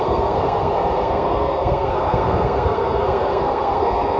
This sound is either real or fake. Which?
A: fake